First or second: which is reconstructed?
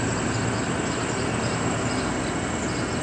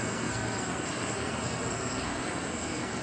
second